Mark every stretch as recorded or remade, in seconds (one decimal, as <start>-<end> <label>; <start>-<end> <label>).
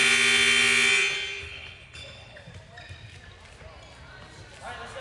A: 0.0-1.4 recorded; 1.4-2.4 remade; 2.4-5.0 recorded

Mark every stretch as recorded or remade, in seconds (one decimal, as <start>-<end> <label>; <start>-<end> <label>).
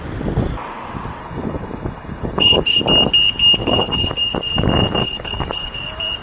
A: 0.0-1.2 recorded; 1.2-2.8 remade; 2.8-3.6 recorded; 3.6-4.1 remade; 4.1-5.0 recorded; 5.0-5.7 remade; 5.7-6.2 recorded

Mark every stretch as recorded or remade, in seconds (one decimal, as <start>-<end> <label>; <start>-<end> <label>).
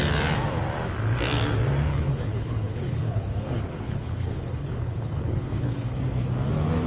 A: 0.0-1.9 recorded; 1.9-6.0 remade; 6.0-6.9 recorded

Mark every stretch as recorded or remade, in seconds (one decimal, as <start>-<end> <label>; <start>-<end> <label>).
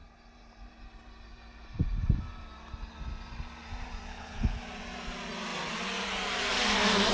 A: 0.0-4.1 recorded; 4.1-4.6 remade; 4.6-7.1 recorded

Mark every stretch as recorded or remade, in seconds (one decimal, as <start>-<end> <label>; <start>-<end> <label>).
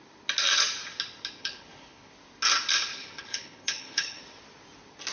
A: 0.0-1.4 recorded; 1.4-2.1 remade; 2.1-2.9 recorded; 2.9-4.2 remade; 4.2-5.1 recorded